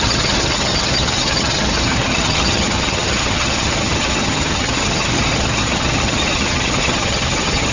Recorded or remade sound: remade